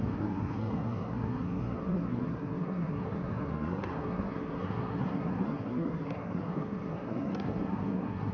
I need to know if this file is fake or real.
fake